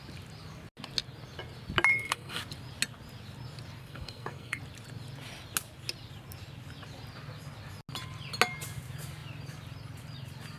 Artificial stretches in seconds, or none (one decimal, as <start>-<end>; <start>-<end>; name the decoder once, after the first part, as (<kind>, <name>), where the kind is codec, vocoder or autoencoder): 1.9-2.4 (codec, SNAC); 3.8-4.6